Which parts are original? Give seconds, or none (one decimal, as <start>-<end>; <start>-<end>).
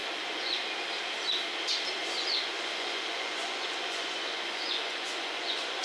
0.7-2.0